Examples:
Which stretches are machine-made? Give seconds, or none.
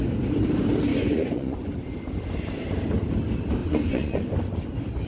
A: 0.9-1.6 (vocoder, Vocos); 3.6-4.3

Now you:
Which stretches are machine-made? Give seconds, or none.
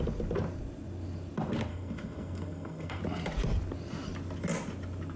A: 1.7-3.0 (codec, SNAC)